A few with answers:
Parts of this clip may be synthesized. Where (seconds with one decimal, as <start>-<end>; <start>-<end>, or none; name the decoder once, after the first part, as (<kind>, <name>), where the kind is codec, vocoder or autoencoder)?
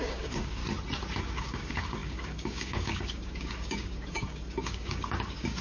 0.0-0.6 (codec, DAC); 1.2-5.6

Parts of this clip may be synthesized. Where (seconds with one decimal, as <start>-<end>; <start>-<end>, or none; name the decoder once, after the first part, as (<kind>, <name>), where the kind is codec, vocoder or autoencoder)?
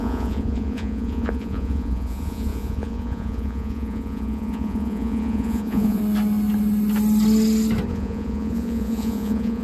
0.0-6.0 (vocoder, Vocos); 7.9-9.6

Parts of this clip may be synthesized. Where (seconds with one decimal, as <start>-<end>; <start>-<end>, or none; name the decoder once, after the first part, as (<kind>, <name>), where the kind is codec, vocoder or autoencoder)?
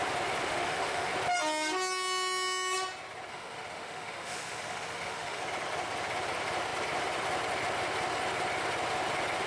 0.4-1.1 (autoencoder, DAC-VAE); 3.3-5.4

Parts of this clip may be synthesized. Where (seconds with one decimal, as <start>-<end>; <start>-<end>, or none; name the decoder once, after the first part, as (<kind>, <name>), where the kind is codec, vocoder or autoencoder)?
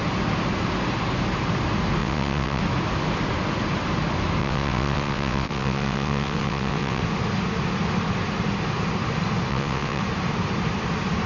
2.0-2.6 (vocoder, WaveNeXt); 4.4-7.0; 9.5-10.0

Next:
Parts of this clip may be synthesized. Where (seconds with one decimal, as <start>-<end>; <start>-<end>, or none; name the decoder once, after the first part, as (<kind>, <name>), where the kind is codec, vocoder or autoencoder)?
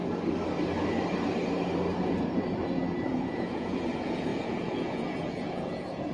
3.1-6.1 (vocoder, Vocos)